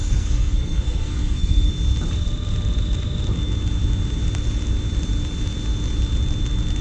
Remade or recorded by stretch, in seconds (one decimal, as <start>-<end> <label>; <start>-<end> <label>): 0.0-1.7 remade; 1.7-6.8 recorded